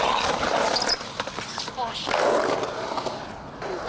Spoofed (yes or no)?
no